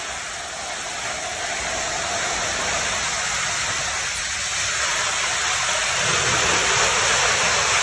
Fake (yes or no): no